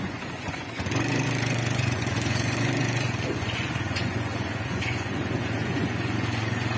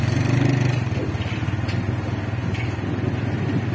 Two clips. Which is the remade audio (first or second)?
first